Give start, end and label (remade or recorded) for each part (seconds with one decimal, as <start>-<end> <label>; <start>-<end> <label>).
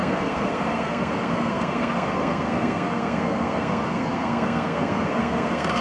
0.0-5.8 remade